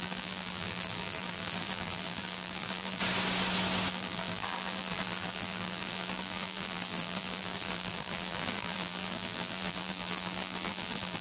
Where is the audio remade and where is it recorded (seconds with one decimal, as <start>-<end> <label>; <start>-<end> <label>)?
0.0-3.0 remade; 3.0-3.9 recorded; 3.9-11.2 remade